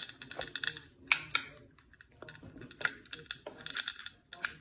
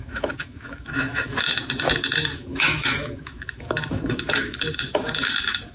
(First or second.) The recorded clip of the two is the first